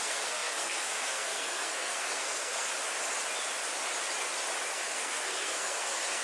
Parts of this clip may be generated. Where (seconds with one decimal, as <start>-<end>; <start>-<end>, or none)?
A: 0.0-2.7; 4.7-6.2